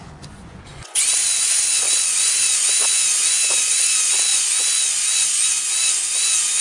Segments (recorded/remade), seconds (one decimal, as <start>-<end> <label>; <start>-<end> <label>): 0.0-6.6 remade